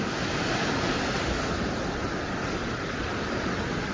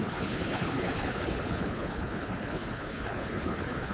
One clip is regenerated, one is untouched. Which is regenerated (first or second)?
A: second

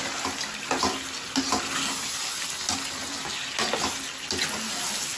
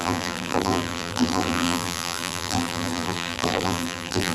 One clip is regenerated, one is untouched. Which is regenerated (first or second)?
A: second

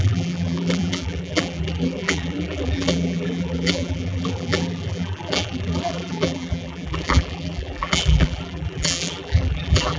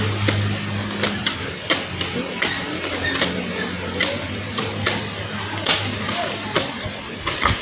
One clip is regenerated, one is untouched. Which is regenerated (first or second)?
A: first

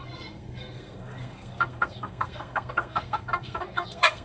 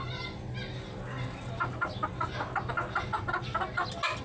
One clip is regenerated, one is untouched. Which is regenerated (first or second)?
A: first